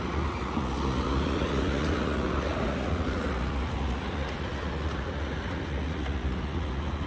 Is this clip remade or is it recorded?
remade